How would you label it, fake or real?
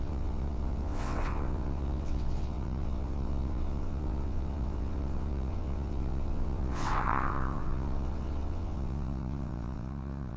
fake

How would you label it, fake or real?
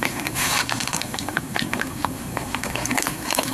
fake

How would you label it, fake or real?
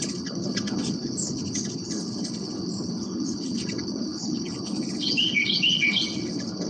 fake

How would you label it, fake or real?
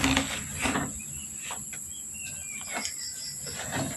real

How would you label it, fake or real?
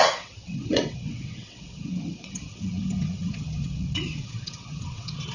fake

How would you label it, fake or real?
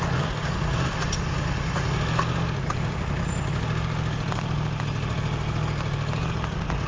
real